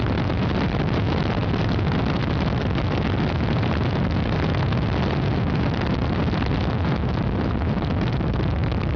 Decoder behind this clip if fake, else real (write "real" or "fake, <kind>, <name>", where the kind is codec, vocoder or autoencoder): fake, vocoder, BigVGAN v2